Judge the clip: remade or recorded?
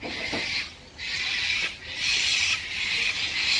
recorded